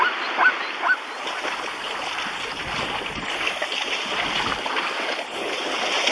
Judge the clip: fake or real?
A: real